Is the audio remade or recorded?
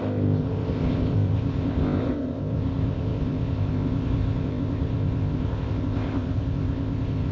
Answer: remade